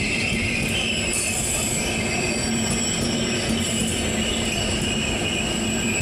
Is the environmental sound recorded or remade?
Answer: recorded